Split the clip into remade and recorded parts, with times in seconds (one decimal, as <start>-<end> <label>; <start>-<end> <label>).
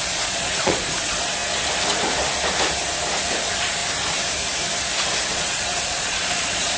0.0-1.4 remade; 1.4-3.4 recorded; 3.4-3.8 remade; 3.8-5.3 recorded; 5.3-6.8 remade